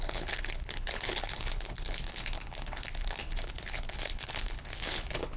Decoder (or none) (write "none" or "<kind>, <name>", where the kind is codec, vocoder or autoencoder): codec, HILCodec